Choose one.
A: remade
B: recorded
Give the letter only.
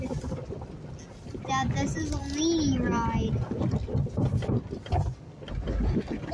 B